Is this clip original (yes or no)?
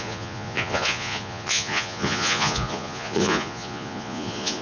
no